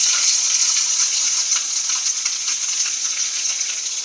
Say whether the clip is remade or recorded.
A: remade